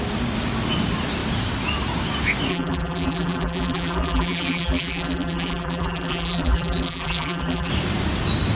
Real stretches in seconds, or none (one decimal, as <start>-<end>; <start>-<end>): 0.0-2.5; 7.7-8.6